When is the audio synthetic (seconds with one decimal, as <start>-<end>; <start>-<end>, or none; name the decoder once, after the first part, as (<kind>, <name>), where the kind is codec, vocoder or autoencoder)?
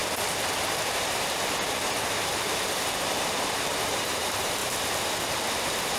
3.3-4.6 (vocoder, BigVGAN v2); 5.5-6.0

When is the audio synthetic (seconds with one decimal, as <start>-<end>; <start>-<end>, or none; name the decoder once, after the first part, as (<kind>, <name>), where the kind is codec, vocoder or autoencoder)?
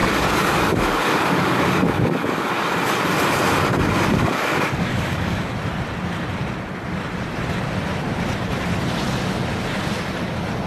0.0-2.5 (codec, DAC); 4.1-5.5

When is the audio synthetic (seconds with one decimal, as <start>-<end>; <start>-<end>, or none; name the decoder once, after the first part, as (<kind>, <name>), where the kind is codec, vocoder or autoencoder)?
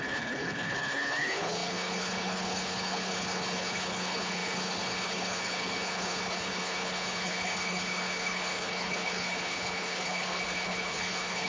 0.0-11.5 (codec, HILCodec)